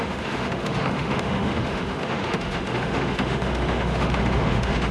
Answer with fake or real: fake